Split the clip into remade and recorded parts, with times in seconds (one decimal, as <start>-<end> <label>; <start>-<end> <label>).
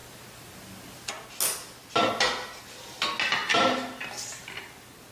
0.0-5.1 recorded